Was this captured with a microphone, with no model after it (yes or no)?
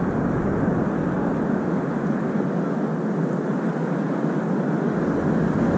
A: yes